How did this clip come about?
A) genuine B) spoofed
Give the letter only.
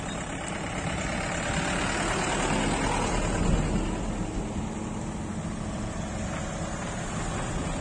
A